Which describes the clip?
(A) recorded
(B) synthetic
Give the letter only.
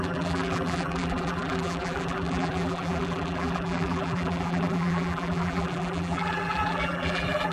B